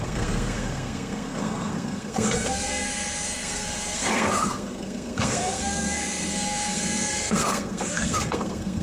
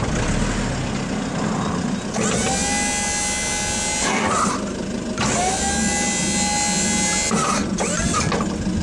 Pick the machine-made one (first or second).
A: first